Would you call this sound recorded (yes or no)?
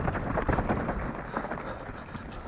yes